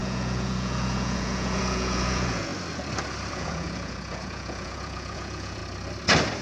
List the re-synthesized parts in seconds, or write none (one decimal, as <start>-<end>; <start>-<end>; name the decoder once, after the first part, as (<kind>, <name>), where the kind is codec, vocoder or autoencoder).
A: 0.0-2.5 (vocoder, Vocos); 3.3-5.6